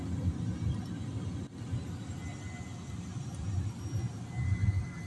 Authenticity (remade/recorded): recorded